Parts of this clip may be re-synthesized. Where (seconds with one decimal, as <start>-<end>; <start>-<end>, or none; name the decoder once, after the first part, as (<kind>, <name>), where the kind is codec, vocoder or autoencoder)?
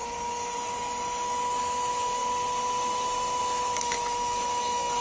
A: 1.6-2.2 (autoencoder, DAC-VAE); 3.4-5.0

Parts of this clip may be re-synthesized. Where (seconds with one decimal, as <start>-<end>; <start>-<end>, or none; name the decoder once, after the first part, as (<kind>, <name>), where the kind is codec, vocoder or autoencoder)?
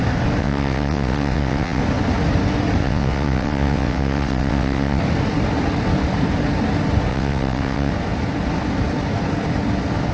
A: 0.4-1.8 (vocoder, WaveNeXt); 2.8-5.0; 7.1-7.9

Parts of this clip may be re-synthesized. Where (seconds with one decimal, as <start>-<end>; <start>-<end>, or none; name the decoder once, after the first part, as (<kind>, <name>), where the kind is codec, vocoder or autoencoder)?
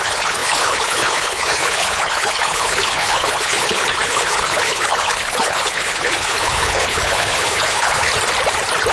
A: 0.0-8.1 (codec, HILCodec)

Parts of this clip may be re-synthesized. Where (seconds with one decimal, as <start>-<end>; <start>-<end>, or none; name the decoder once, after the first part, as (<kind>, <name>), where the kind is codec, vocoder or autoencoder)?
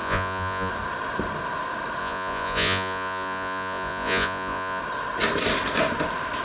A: 0.0-0.7 (vocoder, Vocos); 2.0-4.8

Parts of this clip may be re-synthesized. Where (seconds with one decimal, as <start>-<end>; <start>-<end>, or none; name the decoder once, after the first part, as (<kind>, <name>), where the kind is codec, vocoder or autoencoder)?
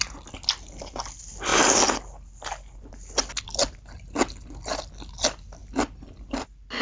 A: none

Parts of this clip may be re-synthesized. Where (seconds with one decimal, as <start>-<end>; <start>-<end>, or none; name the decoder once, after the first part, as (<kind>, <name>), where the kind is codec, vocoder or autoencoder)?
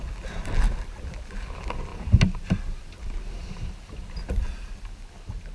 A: none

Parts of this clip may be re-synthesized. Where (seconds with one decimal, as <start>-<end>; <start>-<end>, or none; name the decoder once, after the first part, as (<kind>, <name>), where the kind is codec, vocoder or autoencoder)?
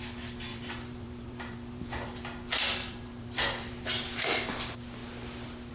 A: 0.5-2.2 (vocoder, BigVGAN v2); 2.8-3.7